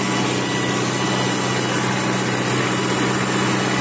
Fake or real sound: real